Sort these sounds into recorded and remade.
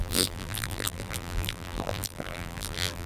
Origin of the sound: remade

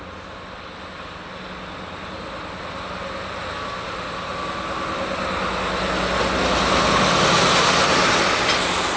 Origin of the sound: recorded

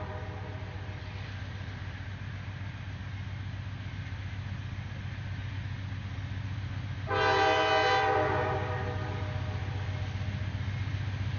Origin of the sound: recorded